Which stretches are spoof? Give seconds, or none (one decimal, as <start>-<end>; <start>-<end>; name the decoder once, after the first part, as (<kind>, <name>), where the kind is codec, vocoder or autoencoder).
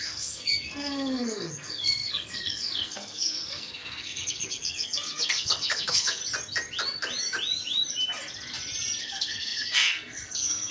0.0-6.2 (codec, SNAC); 9.0-10.7